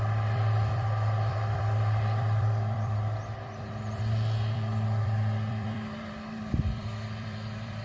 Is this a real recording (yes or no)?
no